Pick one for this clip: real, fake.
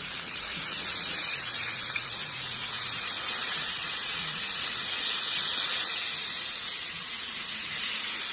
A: fake